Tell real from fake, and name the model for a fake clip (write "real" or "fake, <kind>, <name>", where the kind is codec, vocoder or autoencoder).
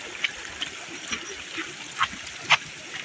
real